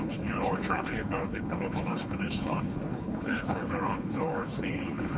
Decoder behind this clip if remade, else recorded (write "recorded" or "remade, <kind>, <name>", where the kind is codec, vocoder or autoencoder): remade, codec, HILCodec